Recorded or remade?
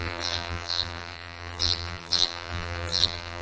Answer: remade